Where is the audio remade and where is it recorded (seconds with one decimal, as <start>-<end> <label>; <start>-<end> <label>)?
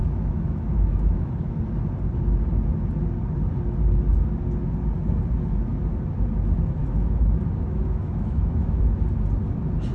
0.0-1.5 remade; 1.5-6.8 recorded; 6.8-8.8 remade; 8.8-9.9 recorded